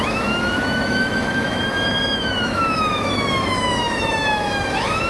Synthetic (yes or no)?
yes